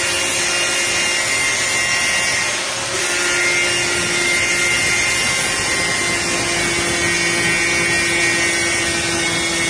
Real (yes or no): yes